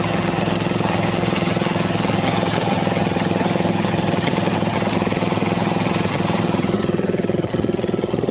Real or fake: fake